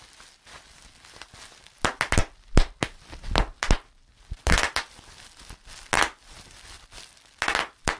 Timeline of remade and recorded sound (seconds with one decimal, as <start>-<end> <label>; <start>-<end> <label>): 0.0-8.0 recorded